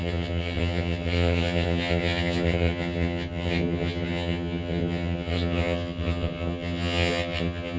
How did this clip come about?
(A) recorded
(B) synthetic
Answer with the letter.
B